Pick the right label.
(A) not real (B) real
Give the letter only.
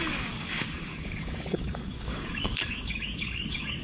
A